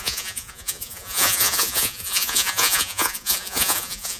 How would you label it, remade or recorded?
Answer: remade